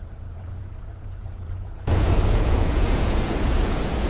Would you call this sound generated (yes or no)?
yes